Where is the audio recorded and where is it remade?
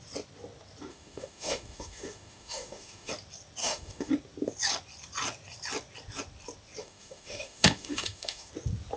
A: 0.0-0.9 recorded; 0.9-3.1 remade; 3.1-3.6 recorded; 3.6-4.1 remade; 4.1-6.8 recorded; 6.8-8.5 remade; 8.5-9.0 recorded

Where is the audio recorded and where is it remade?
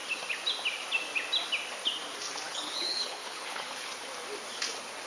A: 0.0-2.5 recorded; 2.5-3.9 remade; 3.9-5.1 recorded